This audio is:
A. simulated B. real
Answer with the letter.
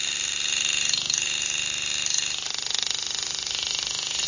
B